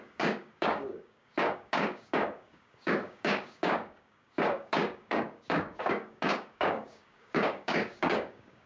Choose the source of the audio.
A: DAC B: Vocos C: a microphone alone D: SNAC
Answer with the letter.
A